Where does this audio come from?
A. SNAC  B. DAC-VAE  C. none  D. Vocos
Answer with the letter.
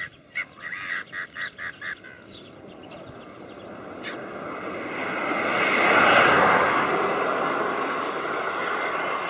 C